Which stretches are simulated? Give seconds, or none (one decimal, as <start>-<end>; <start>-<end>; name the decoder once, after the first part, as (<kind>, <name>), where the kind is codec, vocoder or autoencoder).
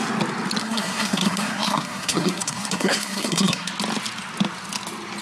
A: 0.6-3.7 (codec, SNAC)